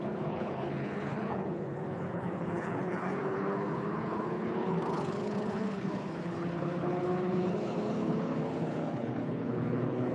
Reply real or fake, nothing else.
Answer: fake